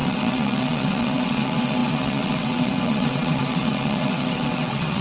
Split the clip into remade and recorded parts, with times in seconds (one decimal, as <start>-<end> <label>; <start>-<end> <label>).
0.0-5.0 remade